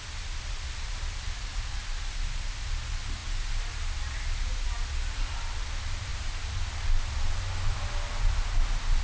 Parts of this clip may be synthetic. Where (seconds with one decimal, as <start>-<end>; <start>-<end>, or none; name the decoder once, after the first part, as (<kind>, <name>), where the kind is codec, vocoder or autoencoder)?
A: none